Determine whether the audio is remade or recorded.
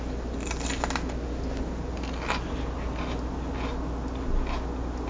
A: recorded